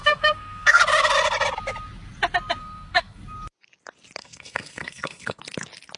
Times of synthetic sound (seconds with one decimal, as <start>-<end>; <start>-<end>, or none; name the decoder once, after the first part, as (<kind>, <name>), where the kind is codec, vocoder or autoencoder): 0.0-0.8 (codec, SNAC); 2.6-3.2; 4.2-5.4